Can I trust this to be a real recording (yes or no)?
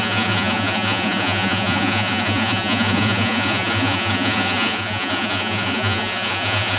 no